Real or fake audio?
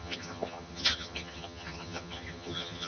fake